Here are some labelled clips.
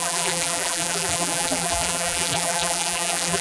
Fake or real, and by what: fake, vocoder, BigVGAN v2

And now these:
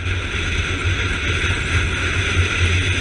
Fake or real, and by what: real